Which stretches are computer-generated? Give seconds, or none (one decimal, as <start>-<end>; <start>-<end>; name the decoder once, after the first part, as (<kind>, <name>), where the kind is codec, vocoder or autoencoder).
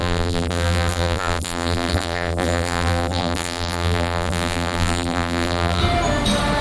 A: 0.0-5.8 (vocoder, BigVGAN v2)